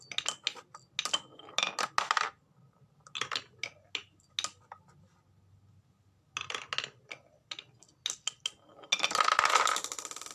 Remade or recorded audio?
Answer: recorded